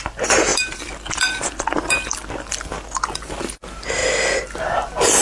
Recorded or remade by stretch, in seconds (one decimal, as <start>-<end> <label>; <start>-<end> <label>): 0.0-5.2 recorded